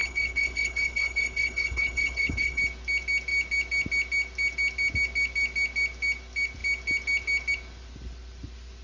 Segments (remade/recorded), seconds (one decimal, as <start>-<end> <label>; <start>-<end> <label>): 0.0-2.6 remade; 2.6-8.8 recorded